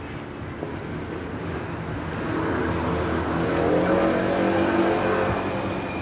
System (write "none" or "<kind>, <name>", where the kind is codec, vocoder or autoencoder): none